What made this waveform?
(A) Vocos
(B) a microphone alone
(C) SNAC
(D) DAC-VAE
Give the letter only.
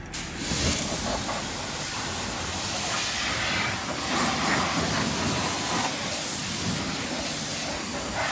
B